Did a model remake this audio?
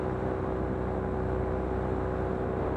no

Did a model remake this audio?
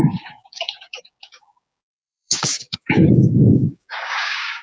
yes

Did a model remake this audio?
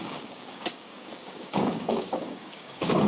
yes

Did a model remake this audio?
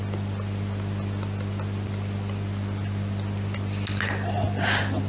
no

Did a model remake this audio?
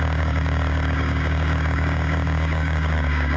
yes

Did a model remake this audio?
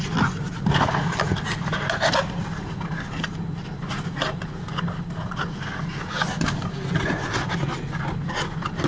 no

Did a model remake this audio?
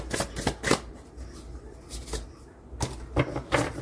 no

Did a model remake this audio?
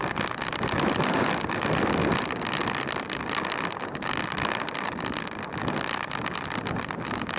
no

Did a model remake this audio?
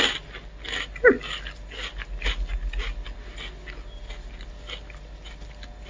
no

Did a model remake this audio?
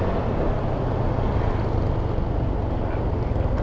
no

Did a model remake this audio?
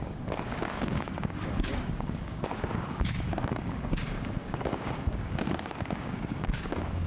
yes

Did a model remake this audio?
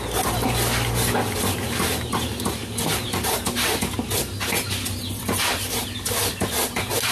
no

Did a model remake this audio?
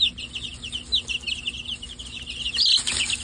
no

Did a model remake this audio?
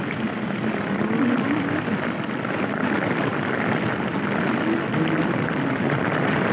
no